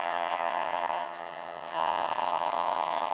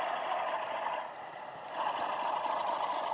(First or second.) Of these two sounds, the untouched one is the second